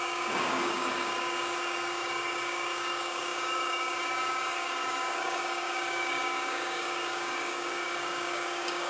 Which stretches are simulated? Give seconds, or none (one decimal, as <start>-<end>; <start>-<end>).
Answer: 0.0-8.9

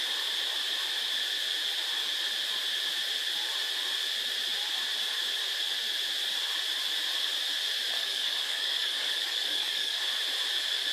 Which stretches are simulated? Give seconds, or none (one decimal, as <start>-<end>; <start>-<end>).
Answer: 8.0-10.0